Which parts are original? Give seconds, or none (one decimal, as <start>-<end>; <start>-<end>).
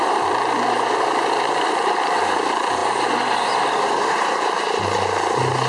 0.0-5.7